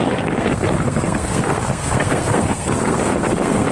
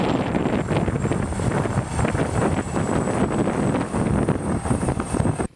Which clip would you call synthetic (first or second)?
first